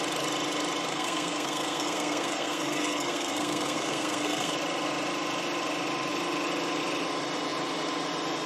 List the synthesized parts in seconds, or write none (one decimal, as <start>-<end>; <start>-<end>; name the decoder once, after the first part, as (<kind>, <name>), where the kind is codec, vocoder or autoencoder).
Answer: 0.9-4.5 (codec, SNAC)

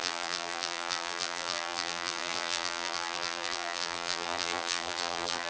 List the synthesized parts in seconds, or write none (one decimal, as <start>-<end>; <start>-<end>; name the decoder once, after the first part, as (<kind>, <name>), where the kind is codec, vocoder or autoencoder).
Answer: 0.0-5.5 (vocoder, BigVGAN v2)

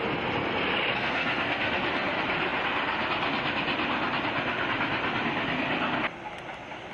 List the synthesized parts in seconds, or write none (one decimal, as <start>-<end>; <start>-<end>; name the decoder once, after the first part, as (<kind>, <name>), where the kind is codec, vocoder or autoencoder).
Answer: 0.9-1.7 (codec, SNAC)

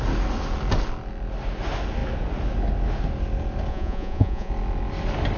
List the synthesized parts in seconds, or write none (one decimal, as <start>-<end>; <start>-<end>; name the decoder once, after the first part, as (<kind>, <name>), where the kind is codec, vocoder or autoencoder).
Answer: 3.7-4.5 (vocoder, Vocos)

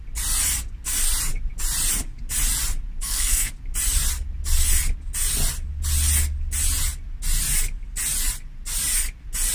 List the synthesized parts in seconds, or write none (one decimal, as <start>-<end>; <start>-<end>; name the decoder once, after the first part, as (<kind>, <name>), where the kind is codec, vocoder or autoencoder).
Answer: 3.0-3.5 (codec, SNAC)

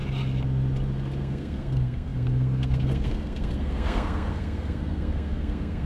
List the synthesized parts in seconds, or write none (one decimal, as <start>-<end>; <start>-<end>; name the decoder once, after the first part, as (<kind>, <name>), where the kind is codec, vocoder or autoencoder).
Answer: 1.2-5.9 (codec, SNAC)

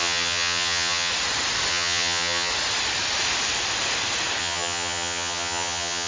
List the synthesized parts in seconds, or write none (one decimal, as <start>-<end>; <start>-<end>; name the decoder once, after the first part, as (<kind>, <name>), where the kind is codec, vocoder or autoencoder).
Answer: 0.0-1.1 (vocoder, HiFi-GAN); 1.7-2.5; 4.4-6.1